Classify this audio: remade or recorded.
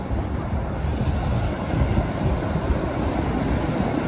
recorded